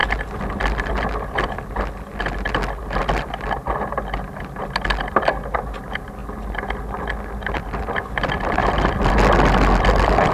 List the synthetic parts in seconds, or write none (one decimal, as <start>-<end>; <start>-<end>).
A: none